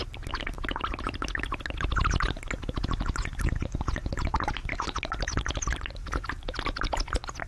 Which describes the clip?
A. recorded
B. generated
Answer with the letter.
A